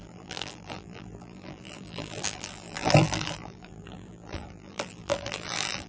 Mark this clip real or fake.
fake